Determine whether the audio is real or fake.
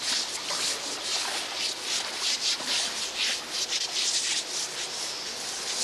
real